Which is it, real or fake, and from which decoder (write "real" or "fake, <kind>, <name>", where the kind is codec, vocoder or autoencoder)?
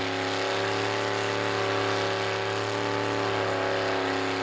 real